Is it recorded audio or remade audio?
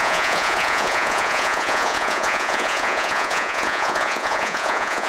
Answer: remade